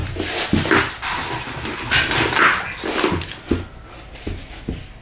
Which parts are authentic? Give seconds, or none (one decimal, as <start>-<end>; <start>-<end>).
0.0-5.0

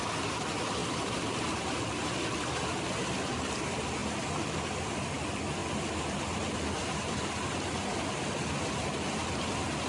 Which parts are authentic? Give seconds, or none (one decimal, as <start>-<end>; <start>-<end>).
0.0-0.8; 1.4-9.9

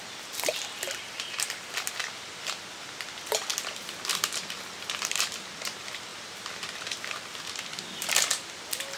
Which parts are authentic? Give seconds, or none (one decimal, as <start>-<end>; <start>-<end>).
0.0-3.5; 4.3-9.0

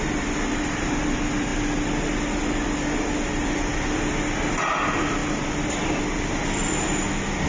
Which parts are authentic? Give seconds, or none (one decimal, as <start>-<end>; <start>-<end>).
0.0-7.5

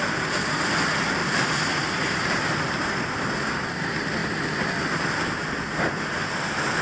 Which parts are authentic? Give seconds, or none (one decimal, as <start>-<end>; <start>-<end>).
0.0-1.2; 3.0-6.8

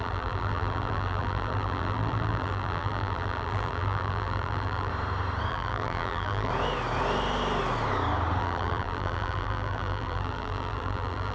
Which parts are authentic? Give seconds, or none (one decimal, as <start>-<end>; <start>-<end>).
4.9-5.5; 6.5-8.4